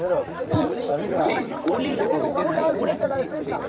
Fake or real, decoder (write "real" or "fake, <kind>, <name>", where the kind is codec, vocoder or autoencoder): fake, vocoder, Vocos